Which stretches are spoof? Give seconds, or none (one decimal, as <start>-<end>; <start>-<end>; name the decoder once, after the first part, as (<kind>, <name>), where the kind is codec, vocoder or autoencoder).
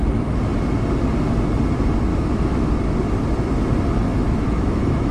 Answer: 2.1-2.7 (autoencoder, DAC-VAE); 4.1-5.1